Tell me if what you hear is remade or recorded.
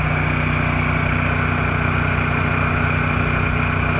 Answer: recorded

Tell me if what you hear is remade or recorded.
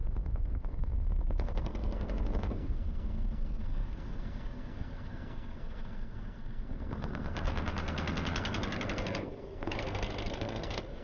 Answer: remade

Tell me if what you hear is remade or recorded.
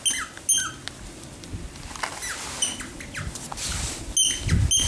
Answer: recorded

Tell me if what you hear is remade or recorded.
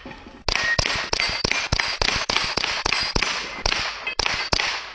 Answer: recorded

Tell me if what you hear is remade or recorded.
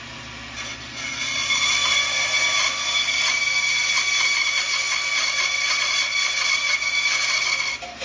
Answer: recorded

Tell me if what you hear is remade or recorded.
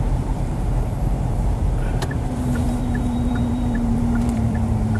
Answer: remade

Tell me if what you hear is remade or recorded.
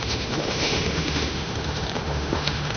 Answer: remade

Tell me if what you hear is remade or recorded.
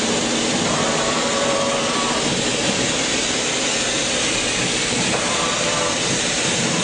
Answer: remade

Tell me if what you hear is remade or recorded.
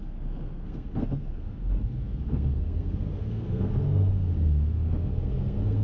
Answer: remade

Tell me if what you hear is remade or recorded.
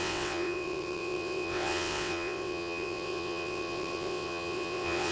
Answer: remade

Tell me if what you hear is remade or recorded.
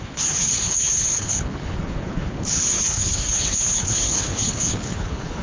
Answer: remade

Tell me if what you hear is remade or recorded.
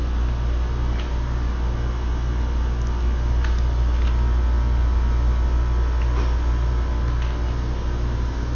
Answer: recorded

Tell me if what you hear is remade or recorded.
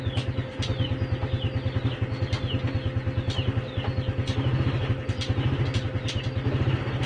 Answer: recorded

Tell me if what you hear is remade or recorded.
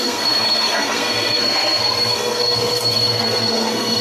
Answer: remade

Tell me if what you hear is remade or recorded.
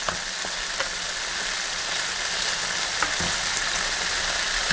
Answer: recorded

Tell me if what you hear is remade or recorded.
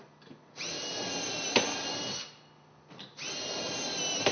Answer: recorded